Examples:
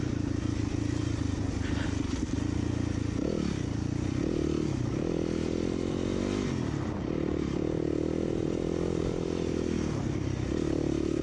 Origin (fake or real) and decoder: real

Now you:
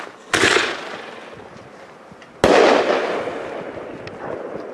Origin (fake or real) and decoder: real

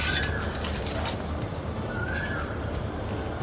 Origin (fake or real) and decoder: real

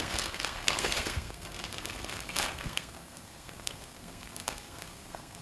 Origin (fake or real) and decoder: fake, codec, SNAC